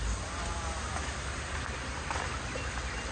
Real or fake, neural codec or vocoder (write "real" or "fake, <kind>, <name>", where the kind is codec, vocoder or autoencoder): real